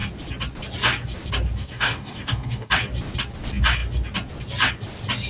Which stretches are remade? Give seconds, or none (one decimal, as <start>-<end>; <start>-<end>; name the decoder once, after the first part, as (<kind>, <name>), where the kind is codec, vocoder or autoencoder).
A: 1.6-2.7 (codec, DAC)